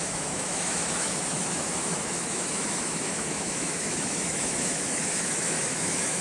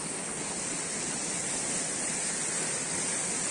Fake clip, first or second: first